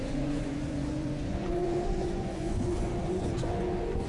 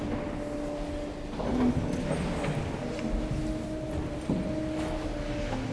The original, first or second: second